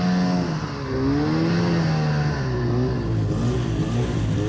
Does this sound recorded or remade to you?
recorded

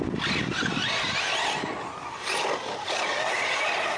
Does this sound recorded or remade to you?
recorded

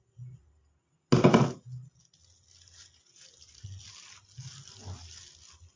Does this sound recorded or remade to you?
recorded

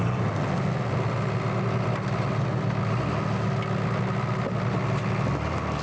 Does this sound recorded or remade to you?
recorded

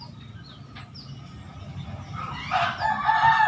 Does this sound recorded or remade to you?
recorded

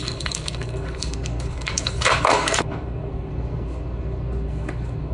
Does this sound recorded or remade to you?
remade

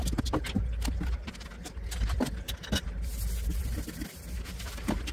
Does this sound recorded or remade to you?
recorded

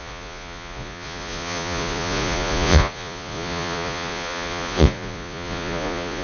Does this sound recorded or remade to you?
remade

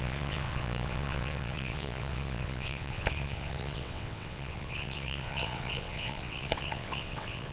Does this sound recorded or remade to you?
remade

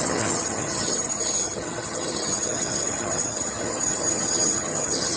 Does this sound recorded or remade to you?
remade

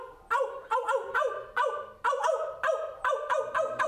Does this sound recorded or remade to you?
recorded